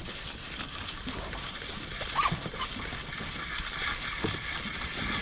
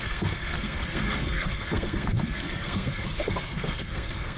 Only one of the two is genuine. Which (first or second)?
first